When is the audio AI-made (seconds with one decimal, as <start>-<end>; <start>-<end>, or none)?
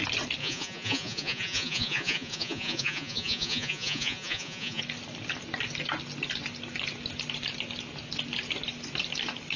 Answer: 0.4-4.8